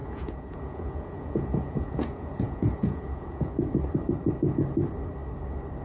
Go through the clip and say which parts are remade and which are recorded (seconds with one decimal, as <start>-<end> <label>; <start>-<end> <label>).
0.0-3.5 remade; 3.5-5.8 recorded